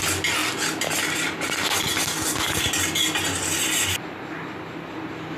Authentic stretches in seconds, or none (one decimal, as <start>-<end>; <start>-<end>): 0.0-5.4